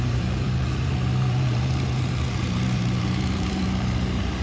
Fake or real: fake